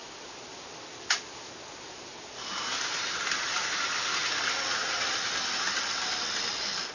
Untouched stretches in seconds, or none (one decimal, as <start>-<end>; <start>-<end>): 0.0-6.9

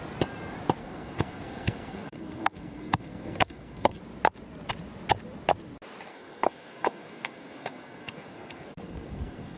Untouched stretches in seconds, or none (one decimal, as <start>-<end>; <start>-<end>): 0.0-0.8; 4.0-6.1

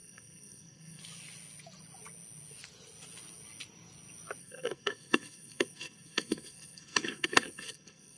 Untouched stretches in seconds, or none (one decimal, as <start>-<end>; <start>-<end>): 1.0-4.4

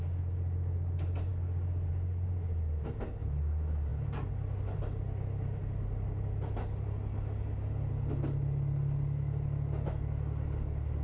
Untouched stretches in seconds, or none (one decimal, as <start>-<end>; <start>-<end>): 0.0-11.0